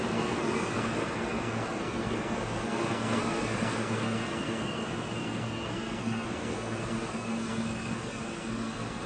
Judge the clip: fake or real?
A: fake